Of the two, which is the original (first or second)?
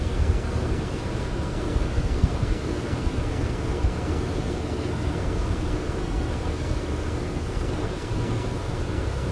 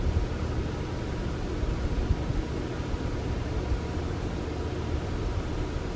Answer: second